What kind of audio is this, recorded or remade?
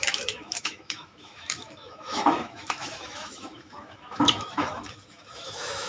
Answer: remade